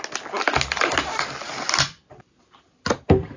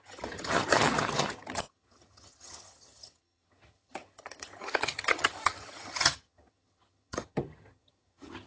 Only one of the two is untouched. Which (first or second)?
first